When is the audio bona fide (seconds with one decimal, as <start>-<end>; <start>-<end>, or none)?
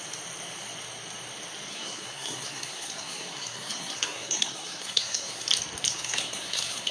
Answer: 0.0-1.7; 5.5-5.9